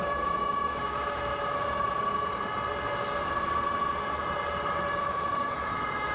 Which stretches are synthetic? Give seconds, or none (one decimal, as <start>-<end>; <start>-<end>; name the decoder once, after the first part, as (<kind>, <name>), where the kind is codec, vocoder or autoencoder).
0.0-1.3 (autoencoder, DAC-VAE); 5.0-6.1